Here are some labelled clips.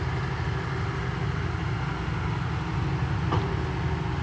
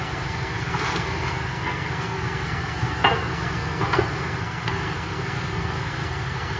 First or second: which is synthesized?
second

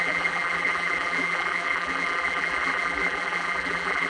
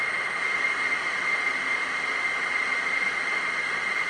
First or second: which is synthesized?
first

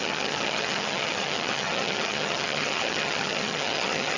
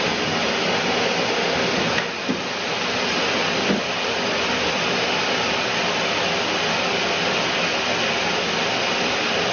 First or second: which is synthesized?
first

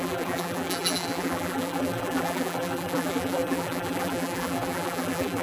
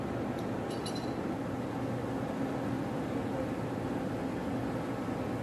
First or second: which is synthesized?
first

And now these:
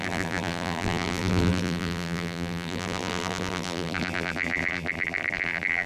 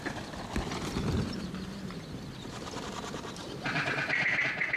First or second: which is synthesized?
first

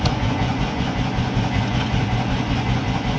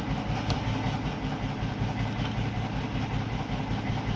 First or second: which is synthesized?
first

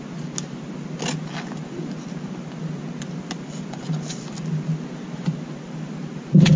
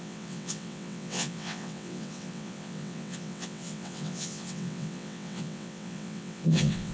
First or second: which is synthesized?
second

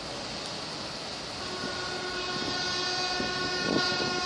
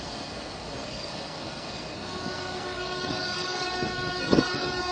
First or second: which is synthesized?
second